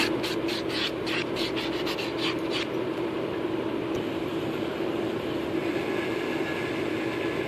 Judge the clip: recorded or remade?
recorded